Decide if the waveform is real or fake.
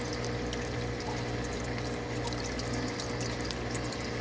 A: real